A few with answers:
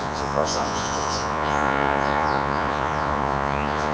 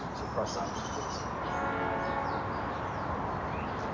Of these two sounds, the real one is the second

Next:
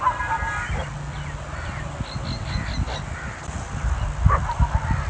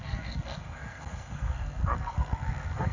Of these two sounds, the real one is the first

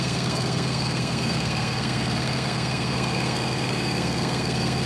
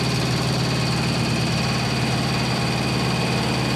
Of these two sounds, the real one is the second